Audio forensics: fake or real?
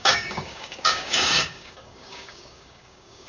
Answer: fake